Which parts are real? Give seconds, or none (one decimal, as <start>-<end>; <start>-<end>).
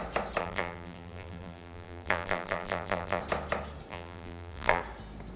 0.0-0.4; 3.2-3.9; 4.8-5.4